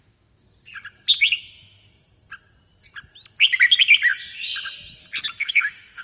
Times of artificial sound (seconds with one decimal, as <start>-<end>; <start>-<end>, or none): 0.0-0.4; 1.4-1.9; 5.4-6.0